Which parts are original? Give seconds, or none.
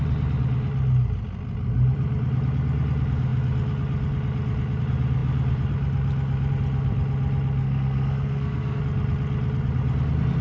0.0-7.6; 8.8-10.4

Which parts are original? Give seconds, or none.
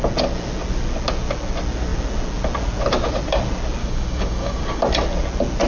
0.0-3.8; 4.8-5.7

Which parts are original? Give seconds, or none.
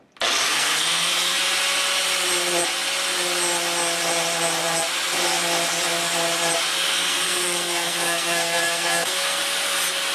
0.0-0.5; 1.4-6.9; 9.4-10.1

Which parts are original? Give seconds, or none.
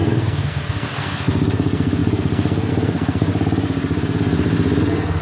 3.3-4.8